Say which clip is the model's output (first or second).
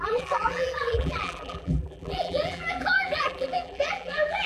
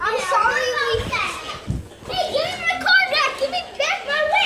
first